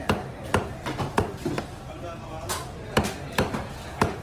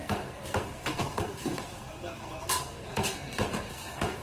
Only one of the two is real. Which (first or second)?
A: first